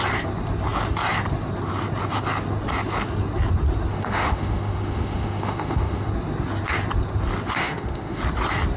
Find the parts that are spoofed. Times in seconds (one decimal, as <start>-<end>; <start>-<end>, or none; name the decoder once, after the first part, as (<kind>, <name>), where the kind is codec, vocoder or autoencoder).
3.9-6.1 (autoencoder, DAC-VAE); 7.6-8.2